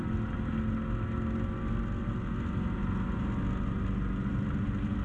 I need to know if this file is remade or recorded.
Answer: recorded